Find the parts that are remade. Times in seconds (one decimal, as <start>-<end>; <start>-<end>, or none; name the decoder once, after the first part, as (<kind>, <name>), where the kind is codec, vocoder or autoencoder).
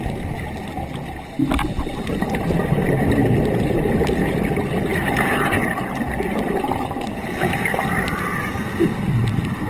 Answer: none